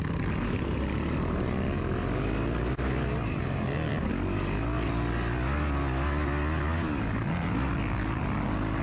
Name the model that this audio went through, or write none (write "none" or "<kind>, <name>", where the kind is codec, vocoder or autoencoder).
none